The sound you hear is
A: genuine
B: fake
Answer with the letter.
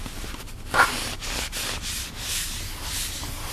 A